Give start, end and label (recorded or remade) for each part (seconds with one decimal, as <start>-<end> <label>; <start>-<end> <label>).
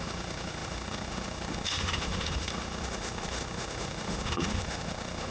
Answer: 0.0-5.3 remade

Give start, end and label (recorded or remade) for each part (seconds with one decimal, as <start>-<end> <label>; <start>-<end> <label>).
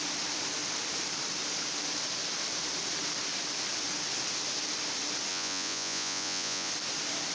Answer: 0.0-5.3 recorded; 5.3-6.7 remade; 6.7-7.3 recorded